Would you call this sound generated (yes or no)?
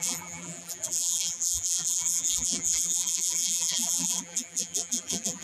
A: yes